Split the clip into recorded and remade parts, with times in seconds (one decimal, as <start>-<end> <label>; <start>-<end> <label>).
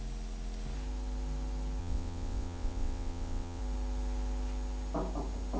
0.0-1.8 recorded; 1.8-3.6 remade; 3.6-5.6 recorded